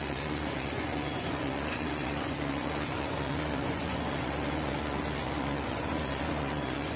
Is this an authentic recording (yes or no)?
no